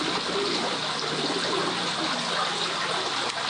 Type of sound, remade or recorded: recorded